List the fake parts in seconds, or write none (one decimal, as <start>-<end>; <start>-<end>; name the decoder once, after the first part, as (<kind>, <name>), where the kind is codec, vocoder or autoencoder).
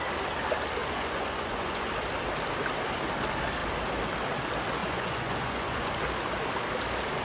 0.8-1.9 (vocoder, Vocos); 4.8-5.9